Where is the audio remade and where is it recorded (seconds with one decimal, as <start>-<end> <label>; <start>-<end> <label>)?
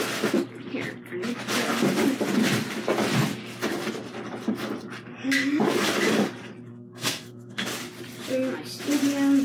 0.0-6.7 recorded; 6.7-7.6 remade; 7.6-9.4 recorded